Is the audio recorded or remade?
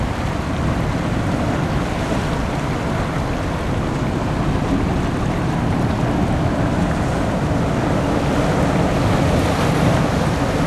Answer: recorded